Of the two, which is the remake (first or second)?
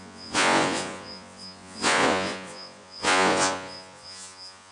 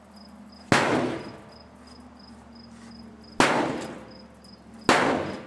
first